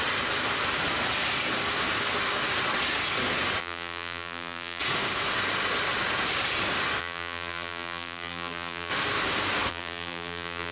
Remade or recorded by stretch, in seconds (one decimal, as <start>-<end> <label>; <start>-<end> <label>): 0.0-3.6 recorded; 3.6-4.8 remade; 4.8-7.0 recorded; 7.0-8.9 remade; 8.9-9.7 recorded; 9.7-10.7 remade